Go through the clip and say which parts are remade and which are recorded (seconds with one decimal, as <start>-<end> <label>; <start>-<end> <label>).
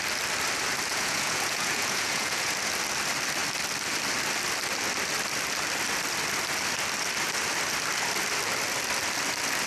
0.0-0.9 recorded; 0.9-2.5 remade; 2.5-9.7 recorded